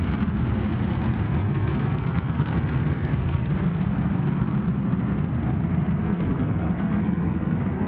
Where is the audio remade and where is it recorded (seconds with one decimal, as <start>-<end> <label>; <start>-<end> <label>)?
0.0-1.4 recorded; 1.4-3.5 remade; 3.5-6.0 recorded; 6.0-7.9 remade